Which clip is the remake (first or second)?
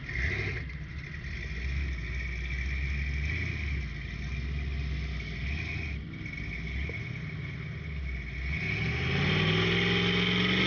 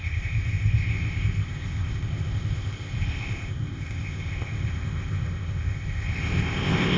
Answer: second